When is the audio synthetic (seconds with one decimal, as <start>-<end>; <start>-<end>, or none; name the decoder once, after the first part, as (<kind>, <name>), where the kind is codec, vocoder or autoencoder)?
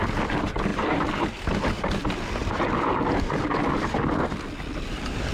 none